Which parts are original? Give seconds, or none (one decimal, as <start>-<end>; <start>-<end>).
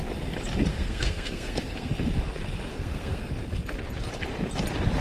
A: 0.0-0.7; 1.9-2.7; 3.3-5.0